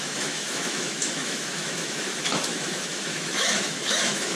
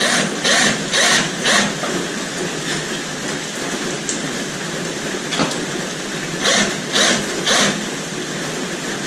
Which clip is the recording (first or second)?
second